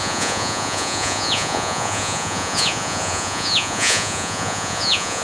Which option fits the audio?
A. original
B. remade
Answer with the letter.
B